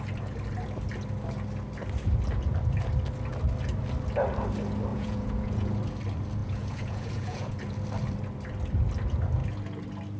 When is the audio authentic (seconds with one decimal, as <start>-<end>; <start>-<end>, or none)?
0.0-4.9; 5.8-6.4; 7.6-10.2